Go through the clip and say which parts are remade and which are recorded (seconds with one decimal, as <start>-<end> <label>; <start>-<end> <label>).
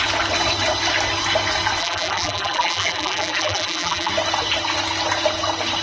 0.0-1.8 recorded; 1.8-4.1 remade; 4.1-5.8 recorded